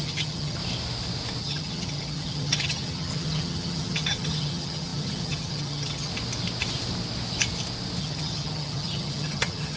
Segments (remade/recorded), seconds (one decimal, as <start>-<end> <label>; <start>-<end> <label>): 0.0-0.6 remade; 0.6-1.4 recorded; 1.4-6.1 remade; 6.1-8.0 recorded; 8.0-9.8 remade